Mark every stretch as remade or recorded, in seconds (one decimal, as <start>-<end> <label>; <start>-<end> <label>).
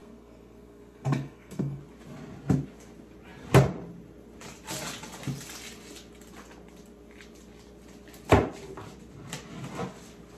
0.0-1.8 remade; 1.8-10.4 recorded